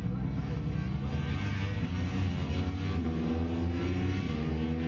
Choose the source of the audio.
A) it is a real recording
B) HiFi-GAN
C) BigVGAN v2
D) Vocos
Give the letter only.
A